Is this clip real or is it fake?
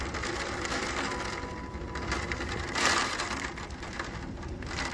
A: fake